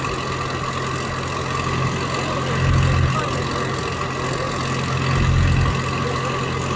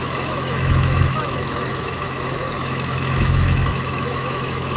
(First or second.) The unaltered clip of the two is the first